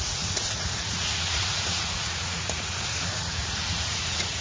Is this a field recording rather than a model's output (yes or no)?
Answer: no